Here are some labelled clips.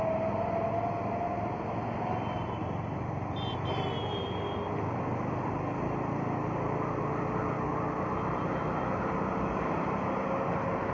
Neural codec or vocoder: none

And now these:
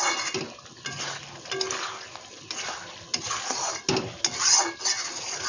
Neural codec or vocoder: none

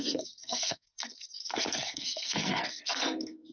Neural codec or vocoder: codec, SNAC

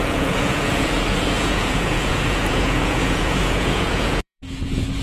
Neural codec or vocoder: vocoder, Vocos